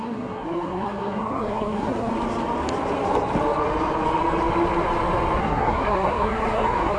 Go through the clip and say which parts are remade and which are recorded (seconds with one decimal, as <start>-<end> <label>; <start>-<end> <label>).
0.0-2.1 remade; 2.1-5.4 recorded; 5.4-7.0 remade

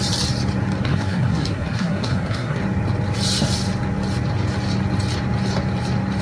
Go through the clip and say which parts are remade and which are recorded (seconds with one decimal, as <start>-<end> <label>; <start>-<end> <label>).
0.0-0.9 recorded; 0.9-2.6 remade; 2.6-6.2 recorded

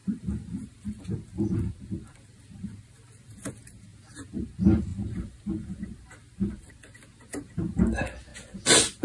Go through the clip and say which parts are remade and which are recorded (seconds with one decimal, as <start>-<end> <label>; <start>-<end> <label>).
0.0-3.5 remade; 3.5-3.9 recorded; 3.9-4.5 remade; 4.5-4.9 recorded; 4.9-6.7 remade; 6.7-9.0 recorded

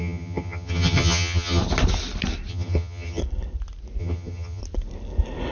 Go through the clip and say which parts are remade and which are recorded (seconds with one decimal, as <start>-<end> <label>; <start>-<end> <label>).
0.0-1.6 remade; 1.6-2.5 recorded; 2.5-3.2 remade; 3.2-4.0 recorded; 4.0-4.6 remade; 4.6-5.5 recorded